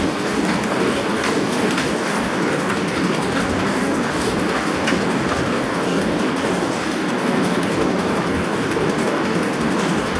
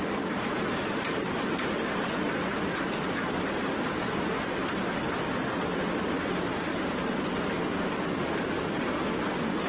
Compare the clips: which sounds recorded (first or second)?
second